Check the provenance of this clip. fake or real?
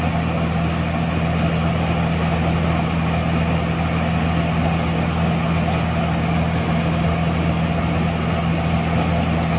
real